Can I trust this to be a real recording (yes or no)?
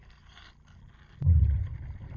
yes